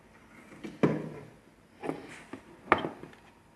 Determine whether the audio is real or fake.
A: real